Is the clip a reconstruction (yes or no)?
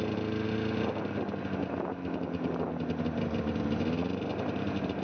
no